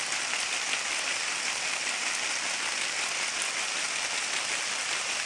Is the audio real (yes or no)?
yes